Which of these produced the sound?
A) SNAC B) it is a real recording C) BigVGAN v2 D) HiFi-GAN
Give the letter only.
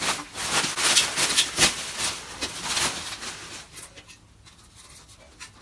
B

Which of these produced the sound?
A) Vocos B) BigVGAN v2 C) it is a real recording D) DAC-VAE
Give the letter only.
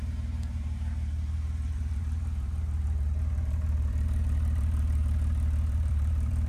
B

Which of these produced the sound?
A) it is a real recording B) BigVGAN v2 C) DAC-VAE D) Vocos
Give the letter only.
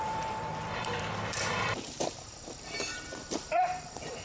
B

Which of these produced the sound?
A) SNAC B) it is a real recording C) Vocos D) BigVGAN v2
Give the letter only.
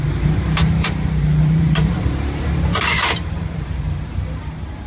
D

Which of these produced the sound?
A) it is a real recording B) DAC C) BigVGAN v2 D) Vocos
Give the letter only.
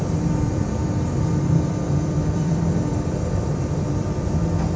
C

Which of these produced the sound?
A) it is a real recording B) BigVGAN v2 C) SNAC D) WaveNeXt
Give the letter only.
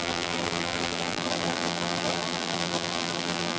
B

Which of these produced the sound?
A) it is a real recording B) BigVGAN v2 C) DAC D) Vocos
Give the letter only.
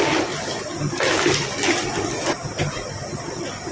A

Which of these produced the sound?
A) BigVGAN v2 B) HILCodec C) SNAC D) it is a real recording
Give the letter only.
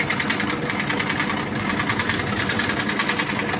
D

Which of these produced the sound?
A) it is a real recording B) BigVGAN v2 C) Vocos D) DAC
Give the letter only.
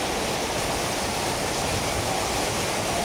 A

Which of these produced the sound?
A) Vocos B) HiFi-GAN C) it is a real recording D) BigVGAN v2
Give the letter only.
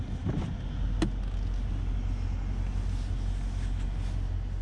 C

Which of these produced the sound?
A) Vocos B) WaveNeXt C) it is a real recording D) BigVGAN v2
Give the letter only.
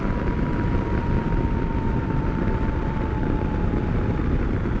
D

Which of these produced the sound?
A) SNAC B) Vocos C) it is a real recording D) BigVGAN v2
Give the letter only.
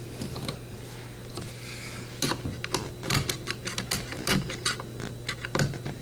C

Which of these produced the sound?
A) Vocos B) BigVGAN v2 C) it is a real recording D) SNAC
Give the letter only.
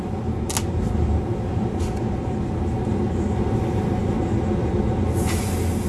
C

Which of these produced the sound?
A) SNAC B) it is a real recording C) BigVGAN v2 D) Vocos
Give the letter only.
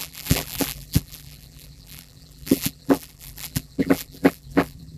C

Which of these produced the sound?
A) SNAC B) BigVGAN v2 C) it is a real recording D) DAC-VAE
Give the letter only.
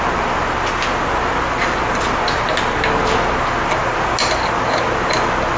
C